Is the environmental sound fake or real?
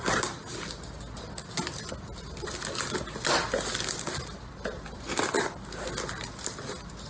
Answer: real